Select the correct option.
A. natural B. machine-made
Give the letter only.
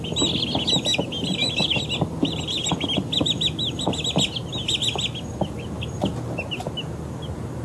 A